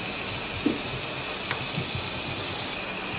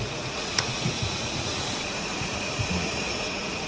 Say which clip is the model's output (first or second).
second